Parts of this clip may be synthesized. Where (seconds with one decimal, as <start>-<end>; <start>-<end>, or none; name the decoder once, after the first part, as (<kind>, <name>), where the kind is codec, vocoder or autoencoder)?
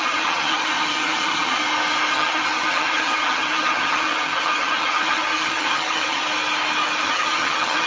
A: 0.0-1.6 (vocoder, HiFi-GAN); 2.1-6.2; 7.0-7.9